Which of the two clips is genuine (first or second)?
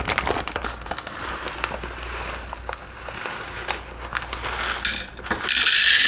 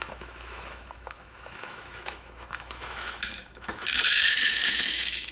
first